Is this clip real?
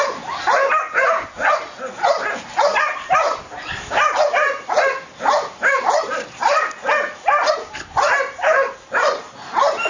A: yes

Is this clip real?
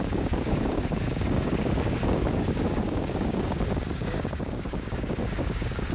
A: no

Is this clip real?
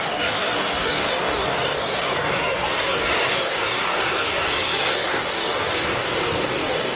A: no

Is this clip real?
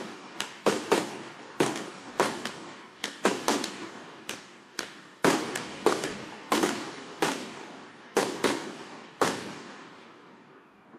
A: no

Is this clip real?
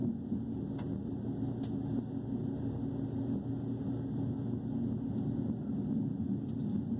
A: yes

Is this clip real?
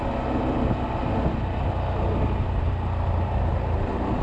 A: yes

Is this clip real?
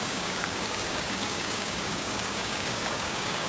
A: no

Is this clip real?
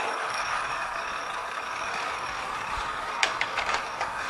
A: no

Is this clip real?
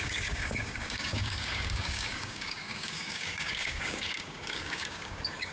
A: no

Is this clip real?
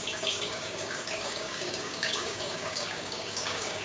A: no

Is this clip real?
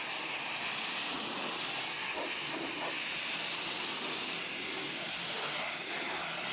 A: yes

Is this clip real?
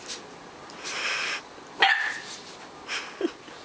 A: yes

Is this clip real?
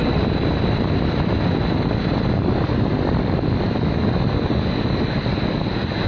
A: yes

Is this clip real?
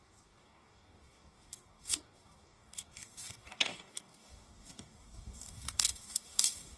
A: no